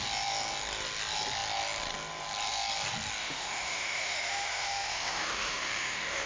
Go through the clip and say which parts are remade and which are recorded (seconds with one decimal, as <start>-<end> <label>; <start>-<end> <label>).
0.0-3.2 recorded; 3.2-6.3 remade